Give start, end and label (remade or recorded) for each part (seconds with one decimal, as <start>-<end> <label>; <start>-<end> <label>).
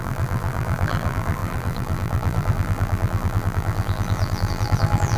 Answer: 0.0-5.2 remade